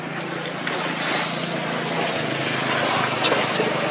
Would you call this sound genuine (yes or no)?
yes